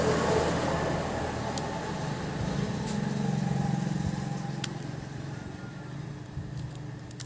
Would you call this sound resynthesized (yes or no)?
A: no